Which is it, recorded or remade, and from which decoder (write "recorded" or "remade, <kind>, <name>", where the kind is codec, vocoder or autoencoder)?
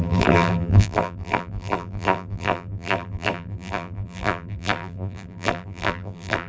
remade, vocoder, BigVGAN v2